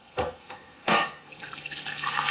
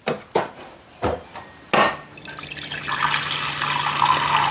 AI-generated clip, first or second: first